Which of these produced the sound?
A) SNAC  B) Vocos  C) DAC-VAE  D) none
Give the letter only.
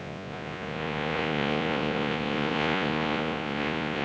B